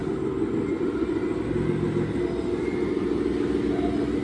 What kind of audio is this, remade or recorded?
recorded